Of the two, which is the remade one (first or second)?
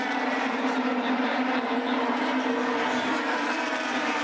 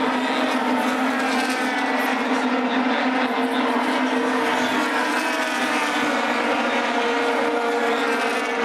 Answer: first